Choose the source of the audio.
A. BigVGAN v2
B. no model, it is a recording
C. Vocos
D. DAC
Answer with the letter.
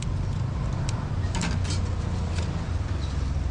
B